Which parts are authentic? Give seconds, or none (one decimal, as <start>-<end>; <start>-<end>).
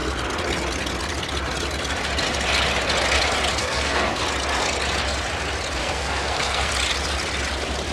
0.0-3.6; 4.2-5.8; 6.7-7.9